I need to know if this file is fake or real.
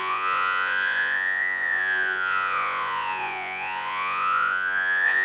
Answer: fake